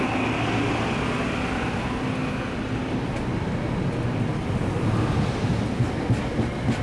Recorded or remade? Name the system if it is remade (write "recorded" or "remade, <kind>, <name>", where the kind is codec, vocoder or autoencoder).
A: recorded